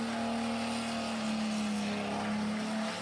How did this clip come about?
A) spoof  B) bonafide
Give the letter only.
B